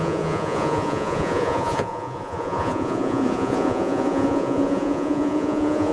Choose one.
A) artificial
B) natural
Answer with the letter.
A